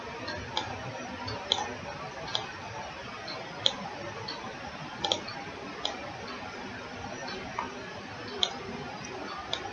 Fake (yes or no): no